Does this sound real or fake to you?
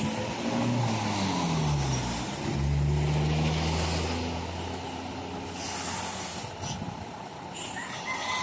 real